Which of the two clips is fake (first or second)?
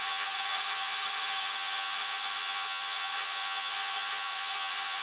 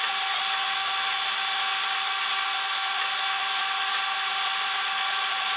first